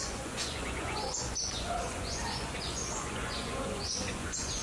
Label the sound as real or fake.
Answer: fake